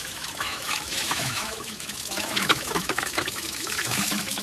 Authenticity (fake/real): fake